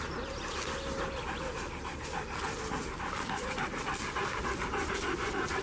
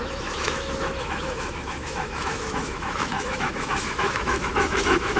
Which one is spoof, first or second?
second